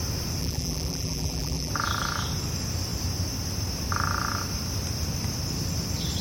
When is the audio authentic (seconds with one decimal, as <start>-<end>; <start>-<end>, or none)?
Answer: 0.0-0.4; 1.7-6.2